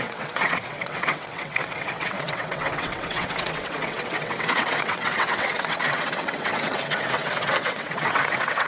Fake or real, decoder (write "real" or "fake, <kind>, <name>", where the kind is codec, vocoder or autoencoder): fake, vocoder, WaveNeXt